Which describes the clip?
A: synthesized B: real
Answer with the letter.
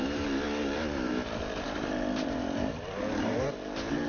A